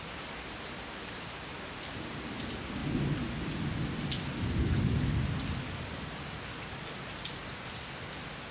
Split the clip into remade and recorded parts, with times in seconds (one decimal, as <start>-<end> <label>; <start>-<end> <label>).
0.0-8.5 recorded